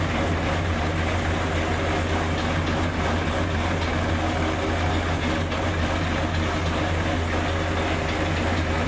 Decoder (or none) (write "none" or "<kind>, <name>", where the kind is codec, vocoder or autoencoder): none